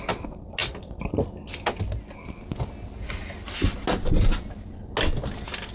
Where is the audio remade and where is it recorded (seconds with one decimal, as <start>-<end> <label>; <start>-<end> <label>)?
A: 0.0-0.6 recorded; 0.6-1.1 remade; 1.1-5.7 recorded